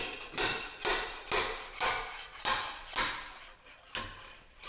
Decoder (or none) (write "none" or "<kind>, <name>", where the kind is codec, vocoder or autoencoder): none